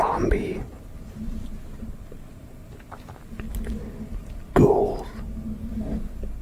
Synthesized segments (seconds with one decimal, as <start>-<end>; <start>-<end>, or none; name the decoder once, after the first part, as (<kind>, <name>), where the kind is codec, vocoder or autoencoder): none